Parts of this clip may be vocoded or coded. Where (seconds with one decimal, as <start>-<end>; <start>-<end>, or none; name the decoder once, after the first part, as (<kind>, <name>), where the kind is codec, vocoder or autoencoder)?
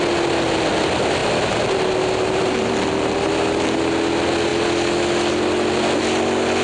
none